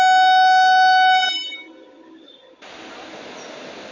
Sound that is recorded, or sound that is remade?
recorded